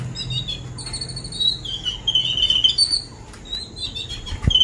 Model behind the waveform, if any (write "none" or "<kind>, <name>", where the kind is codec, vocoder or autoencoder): none